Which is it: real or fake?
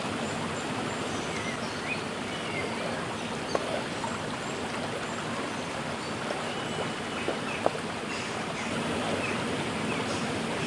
real